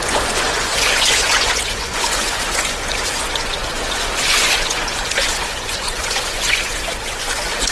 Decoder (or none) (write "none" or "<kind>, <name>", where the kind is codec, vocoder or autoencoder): vocoder, Vocos